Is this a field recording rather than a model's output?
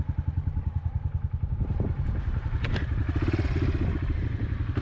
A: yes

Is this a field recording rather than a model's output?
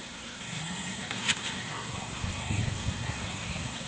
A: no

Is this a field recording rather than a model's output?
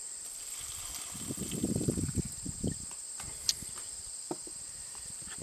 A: yes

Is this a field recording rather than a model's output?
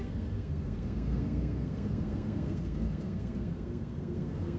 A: no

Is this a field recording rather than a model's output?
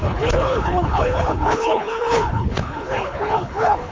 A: no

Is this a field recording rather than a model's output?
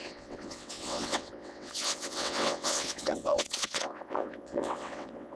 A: no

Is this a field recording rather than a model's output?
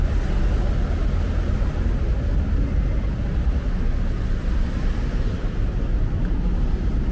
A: yes